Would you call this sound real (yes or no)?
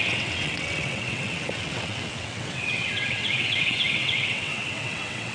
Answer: no